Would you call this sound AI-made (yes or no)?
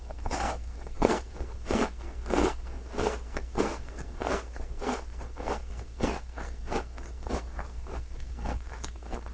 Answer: yes